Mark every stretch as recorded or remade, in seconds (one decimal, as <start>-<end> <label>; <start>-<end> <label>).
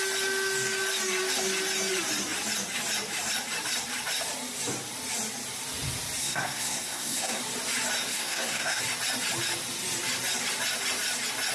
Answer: 0.0-6.2 recorded; 6.2-7.4 remade; 7.4-8.1 recorded; 8.1-8.8 remade; 8.8-11.5 recorded